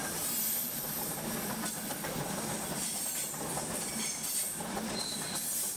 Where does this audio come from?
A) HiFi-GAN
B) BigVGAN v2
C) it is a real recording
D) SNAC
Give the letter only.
C